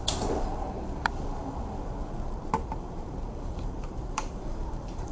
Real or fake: fake